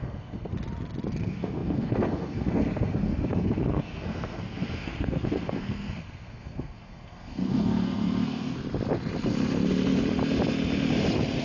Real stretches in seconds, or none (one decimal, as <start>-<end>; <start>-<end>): 0.5-1.2; 8.6-11.4